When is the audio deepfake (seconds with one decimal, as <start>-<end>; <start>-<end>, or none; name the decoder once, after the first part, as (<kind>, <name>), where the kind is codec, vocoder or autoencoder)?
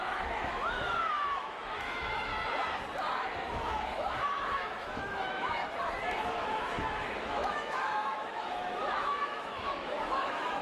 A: 0.0-2.3 (autoencoder, DAC-VAE); 3.5-5.6; 6.2-10.6